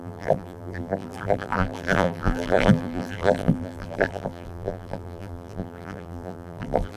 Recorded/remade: remade